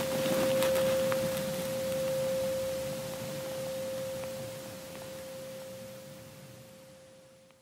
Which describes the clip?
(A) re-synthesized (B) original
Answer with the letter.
B